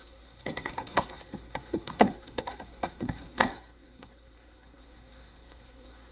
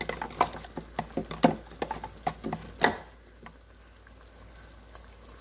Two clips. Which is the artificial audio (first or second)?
first